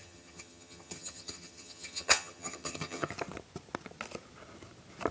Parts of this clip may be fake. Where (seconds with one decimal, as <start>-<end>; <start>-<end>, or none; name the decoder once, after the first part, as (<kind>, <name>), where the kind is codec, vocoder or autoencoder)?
0.0-3.1 (vocoder, HiFi-GAN)